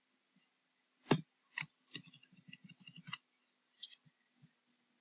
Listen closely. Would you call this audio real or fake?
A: real